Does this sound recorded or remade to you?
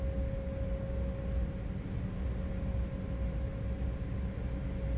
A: recorded